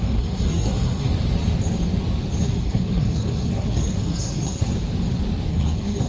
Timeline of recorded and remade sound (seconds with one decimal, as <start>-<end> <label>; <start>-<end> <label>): 0.0-1.1 remade; 1.1-2.4 recorded; 2.4-4.7 remade; 4.7-5.5 recorded; 5.5-6.1 remade